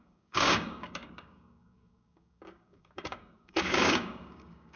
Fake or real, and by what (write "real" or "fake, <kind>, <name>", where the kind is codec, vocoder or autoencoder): fake, codec, DAC